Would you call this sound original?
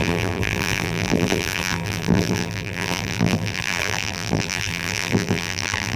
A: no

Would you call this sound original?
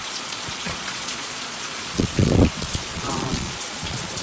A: no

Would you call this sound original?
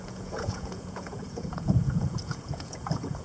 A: no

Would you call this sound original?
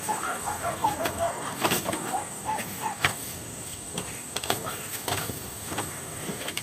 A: no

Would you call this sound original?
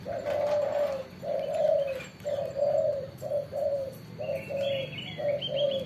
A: yes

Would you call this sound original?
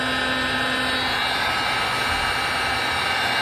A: yes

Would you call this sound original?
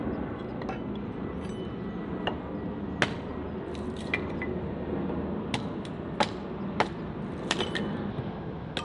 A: yes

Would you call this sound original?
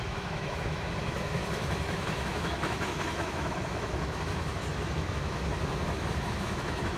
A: no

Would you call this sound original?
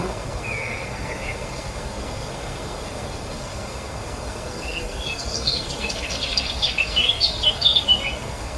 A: no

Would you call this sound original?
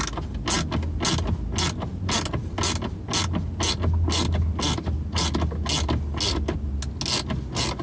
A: yes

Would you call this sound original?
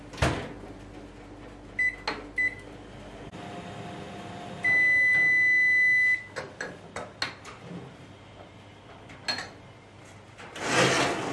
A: yes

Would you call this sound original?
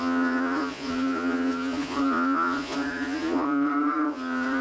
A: no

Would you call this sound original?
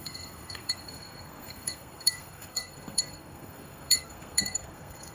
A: no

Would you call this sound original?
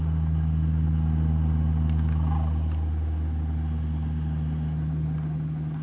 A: yes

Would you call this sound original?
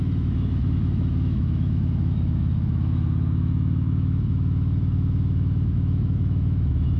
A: no